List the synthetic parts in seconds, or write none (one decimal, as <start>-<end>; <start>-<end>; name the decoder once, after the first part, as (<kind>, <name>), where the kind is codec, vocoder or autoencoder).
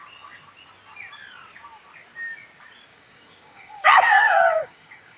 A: 2.9-5.2 (codec, DAC)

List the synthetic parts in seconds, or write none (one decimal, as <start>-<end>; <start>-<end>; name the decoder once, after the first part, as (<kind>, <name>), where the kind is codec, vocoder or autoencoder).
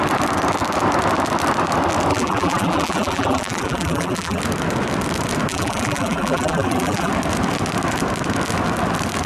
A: 2.1-4.4 (vocoder, BigVGAN v2); 5.5-7.1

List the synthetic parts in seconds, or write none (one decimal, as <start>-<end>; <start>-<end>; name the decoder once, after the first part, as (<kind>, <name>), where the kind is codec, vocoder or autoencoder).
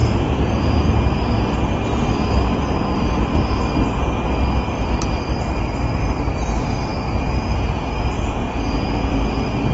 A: 0.0-0.9 (vocoder, Vocos); 6.9-9.1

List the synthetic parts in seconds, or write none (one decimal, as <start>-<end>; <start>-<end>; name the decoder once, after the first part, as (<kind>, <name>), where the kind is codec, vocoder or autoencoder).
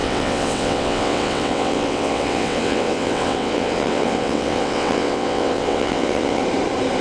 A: 0.0-6.4 (vocoder, WaveNeXt)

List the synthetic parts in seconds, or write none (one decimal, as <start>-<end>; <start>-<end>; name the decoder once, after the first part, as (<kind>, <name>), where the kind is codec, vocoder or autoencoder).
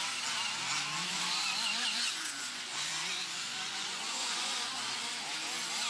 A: 1.5-4.7 (vocoder, Vocos)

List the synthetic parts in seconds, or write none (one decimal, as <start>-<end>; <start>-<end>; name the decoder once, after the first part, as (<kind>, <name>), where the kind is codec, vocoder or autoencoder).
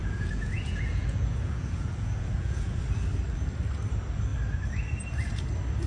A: 0.0-2.8 (vocoder, Vocos)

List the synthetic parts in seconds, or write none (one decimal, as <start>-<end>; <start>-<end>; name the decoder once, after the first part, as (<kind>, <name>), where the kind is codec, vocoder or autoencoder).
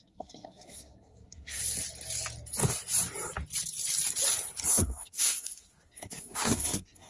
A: 0.0-1.6 (codec, SNAC); 4.7-7.1